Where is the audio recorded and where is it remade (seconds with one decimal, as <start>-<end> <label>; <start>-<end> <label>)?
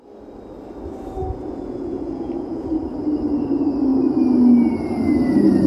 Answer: 0.0-1.2 recorded; 1.2-2.7 remade; 2.7-5.7 recorded